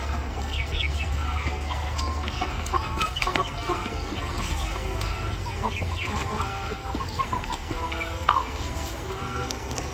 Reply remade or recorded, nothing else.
remade